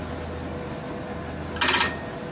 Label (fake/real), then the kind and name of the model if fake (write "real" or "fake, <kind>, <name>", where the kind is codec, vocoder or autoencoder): real